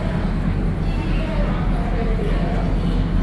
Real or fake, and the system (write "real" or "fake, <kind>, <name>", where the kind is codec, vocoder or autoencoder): real